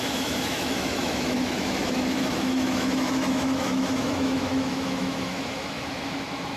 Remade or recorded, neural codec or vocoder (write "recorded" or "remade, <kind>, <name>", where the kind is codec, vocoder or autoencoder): remade, autoencoder, DAC-VAE